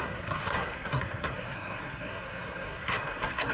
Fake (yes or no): yes